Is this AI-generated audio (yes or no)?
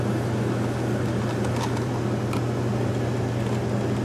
no